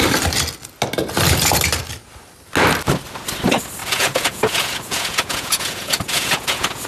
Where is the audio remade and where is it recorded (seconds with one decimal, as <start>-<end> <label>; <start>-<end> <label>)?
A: 0.0-3.8 recorded; 3.8-6.9 remade